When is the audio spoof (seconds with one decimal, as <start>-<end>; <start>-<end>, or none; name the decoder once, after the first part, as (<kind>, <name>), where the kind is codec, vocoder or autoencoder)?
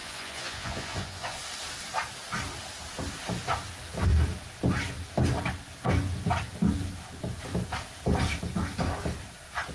0.0-1.4 (vocoder, Vocos)